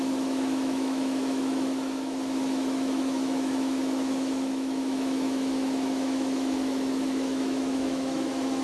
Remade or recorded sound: remade